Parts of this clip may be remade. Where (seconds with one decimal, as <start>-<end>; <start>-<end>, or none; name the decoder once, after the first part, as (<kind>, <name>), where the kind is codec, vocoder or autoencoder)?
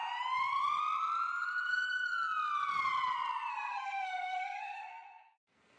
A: 3.5-5.8 (codec, SNAC)